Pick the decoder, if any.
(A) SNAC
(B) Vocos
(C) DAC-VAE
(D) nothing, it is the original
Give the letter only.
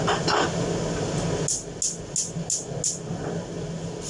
D